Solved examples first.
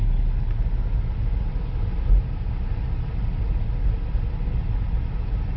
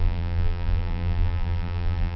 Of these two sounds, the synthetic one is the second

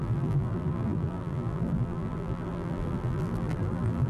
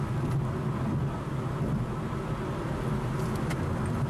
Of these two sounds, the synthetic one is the first